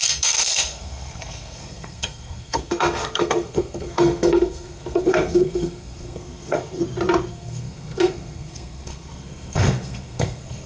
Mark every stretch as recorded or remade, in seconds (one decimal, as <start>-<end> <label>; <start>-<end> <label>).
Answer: 0.0-6.8 remade; 6.8-7.3 recorded; 7.3-10.7 remade